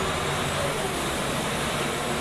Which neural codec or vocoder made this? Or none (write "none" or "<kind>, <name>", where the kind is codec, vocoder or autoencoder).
none